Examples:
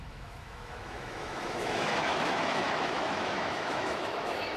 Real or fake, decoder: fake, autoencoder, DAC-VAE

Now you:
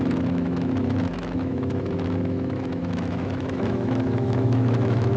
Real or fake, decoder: fake, autoencoder, DAC-VAE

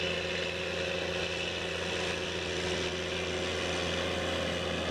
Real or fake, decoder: real